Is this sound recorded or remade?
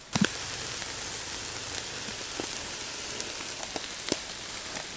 recorded